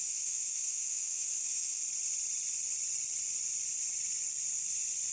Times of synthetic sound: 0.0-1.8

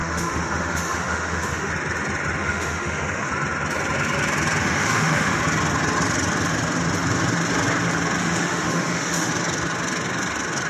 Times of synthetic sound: 0.0-1.7; 2.4-3.3; 4.6-5.4; 8.2-9.3